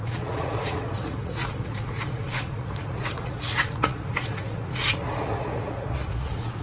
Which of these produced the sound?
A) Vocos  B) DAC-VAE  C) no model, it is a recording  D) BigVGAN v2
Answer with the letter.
A